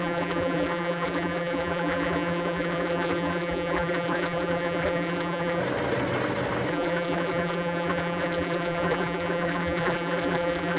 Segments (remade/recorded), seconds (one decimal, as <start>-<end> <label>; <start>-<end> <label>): 0.0-5.6 remade; 5.6-6.7 recorded; 6.7-10.8 remade